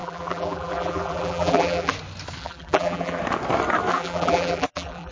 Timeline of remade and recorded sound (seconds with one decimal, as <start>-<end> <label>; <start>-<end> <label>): 0.0-1.9 remade; 1.9-2.4 recorded; 2.4-3.2 remade; 3.2-3.9 recorded; 3.9-5.1 remade